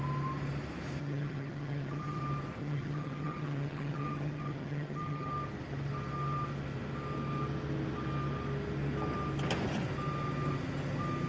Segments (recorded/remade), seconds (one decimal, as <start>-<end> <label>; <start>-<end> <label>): 0.0-1.0 recorded; 1.0-2.2 remade; 2.2-2.6 recorded; 2.6-5.3 remade; 5.3-11.3 recorded